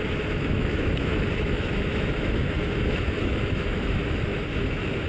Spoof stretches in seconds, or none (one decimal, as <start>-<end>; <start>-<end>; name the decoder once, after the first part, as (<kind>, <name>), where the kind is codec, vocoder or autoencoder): 0.0-5.1 (autoencoder, DAC-VAE)